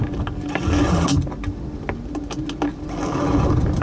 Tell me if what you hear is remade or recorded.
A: recorded